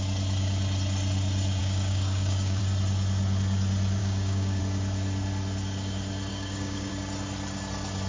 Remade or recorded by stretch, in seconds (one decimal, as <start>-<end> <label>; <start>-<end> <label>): 0.0-1.6 recorded; 1.6-2.6 remade; 2.6-4.0 recorded; 4.0-4.6 remade; 4.6-6.3 recorded; 6.3-6.9 remade; 6.9-8.1 recorded